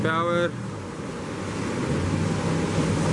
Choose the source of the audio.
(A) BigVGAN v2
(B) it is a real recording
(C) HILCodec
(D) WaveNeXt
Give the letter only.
B